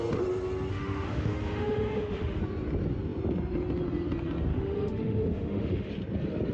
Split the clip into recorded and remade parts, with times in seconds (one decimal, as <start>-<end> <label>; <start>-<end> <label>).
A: 0.0-0.7 recorded; 0.7-2.4 remade; 2.4-4.5 recorded; 4.5-5.9 remade; 5.9-6.5 recorded